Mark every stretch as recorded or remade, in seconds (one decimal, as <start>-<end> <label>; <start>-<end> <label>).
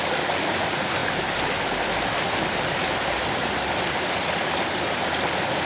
0.0-5.6 recorded